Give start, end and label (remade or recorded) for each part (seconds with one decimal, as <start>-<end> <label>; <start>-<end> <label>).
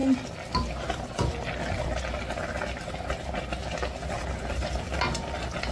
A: 0.0-5.7 recorded